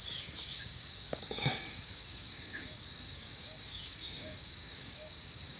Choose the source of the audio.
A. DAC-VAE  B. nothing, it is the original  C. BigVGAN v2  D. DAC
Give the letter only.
D